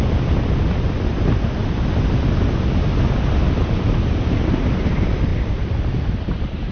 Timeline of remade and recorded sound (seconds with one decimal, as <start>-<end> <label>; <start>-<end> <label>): 0.0-6.7 recorded